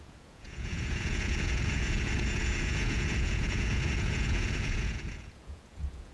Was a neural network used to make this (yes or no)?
yes